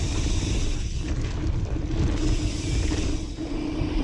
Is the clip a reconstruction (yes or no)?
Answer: no